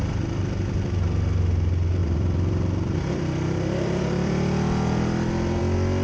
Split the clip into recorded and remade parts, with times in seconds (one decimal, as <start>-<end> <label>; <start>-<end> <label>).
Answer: 0.0-2.0 recorded; 2.0-5.6 remade; 5.6-6.0 recorded